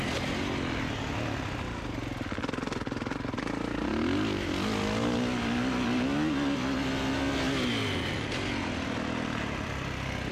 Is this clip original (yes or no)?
yes